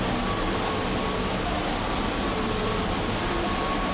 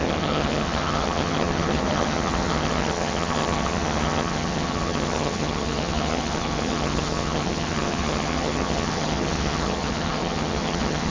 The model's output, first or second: second